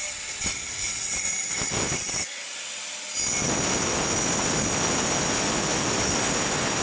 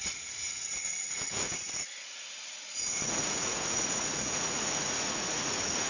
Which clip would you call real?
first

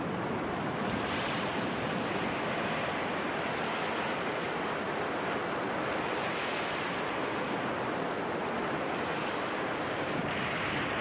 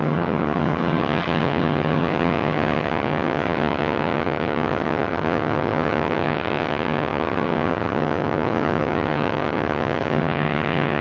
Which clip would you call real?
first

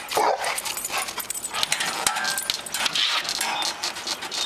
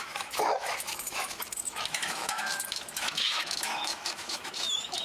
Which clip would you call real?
first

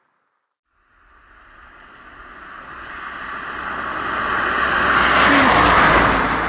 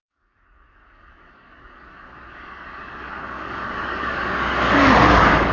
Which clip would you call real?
first